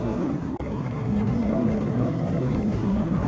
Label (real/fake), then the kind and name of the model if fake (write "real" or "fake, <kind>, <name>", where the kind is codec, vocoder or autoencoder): fake, codec, SNAC